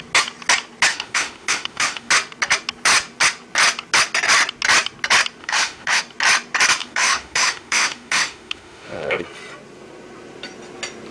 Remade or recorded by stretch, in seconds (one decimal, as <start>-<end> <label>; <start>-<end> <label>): 0.0-0.9 recorded; 0.9-2.1 remade; 2.1-5.4 recorded; 5.4-6.0 remade; 6.0-6.8 recorded; 6.8-9.2 remade; 9.2-11.1 recorded